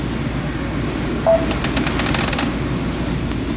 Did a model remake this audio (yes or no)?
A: no